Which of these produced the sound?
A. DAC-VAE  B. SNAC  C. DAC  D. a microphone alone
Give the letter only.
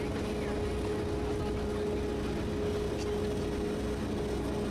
D